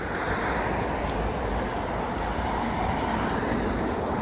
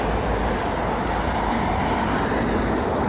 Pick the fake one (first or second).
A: first